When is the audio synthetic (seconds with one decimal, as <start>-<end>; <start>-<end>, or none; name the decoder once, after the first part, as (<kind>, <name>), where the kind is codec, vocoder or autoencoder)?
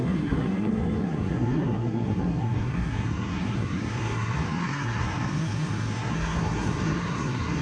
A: 0.0-7.6 (codec, SNAC)